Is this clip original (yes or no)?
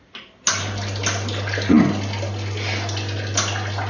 yes